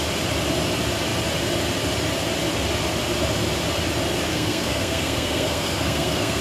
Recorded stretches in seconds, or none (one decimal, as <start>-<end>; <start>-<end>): 0.0-4.3